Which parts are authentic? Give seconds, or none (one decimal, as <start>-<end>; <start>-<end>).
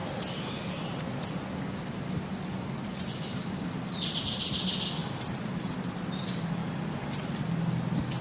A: 0.0-8.2